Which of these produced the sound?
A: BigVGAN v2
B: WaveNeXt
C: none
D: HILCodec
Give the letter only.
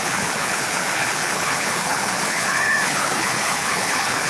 D